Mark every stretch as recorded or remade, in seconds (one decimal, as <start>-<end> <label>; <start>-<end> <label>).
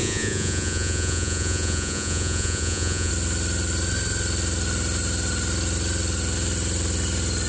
0.0-3.1 remade; 3.1-7.5 recorded